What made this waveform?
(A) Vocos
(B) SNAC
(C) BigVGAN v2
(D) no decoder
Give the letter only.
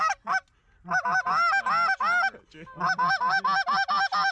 D